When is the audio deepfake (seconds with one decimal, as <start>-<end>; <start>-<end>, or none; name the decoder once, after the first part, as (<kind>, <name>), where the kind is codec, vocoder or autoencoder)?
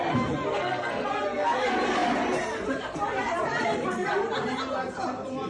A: 0.5-1.1 (codec, SNAC)